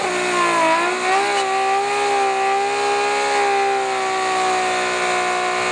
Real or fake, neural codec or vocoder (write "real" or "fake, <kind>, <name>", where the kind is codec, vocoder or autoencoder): real